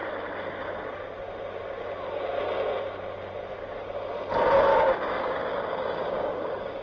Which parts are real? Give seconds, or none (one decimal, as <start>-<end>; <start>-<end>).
0.0-4.7